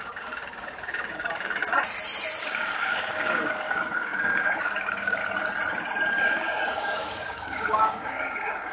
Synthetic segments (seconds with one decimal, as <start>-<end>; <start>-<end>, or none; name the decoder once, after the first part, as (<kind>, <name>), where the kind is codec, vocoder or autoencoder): 0.0-1.6 (codec, DAC); 2.4-5.2; 6.1-8.7